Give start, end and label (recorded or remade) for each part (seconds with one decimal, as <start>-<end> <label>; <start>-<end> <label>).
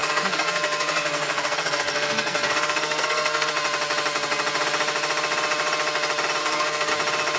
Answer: 0.0-3.5 remade; 3.5-6.4 recorded; 6.4-6.9 remade; 6.9-7.4 recorded